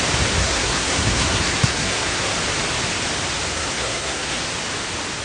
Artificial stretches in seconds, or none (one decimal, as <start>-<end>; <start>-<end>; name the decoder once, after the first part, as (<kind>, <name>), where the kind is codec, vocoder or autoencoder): 0.4-2.3 (codec, SNAC); 3.5-4.4